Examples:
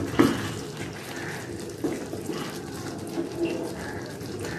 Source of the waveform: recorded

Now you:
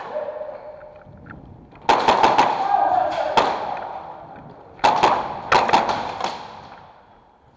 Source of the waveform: recorded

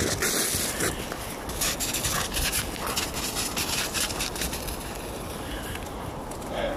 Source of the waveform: recorded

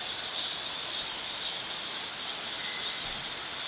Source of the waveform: recorded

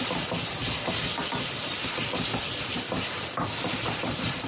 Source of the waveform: recorded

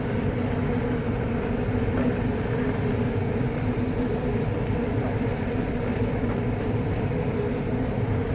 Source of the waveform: remade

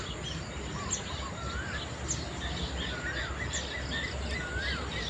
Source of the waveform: recorded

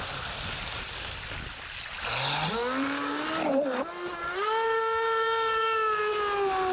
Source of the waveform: recorded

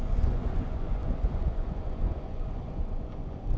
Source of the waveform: remade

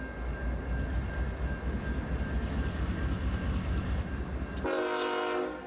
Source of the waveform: recorded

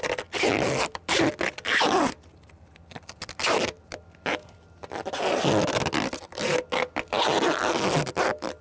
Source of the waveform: recorded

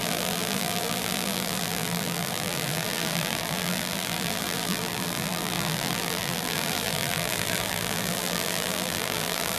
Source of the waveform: remade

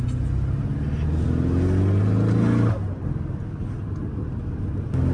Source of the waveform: recorded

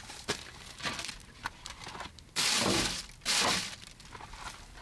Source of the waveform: recorded